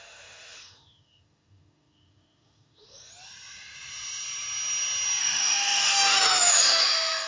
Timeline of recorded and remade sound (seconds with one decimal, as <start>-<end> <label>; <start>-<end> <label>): 0.0-3.1 remade; 3.1-5.2 recorded; 5.2-7.3 remade